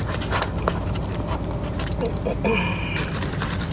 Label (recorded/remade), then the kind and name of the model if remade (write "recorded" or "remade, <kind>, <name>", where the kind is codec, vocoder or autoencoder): recorded